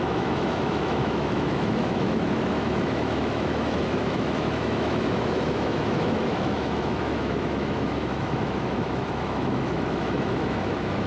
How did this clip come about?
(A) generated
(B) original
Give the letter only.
A